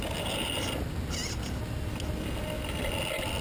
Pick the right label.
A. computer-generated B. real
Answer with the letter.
B